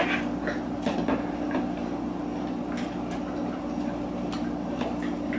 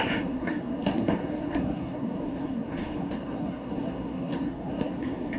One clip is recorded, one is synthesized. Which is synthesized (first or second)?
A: second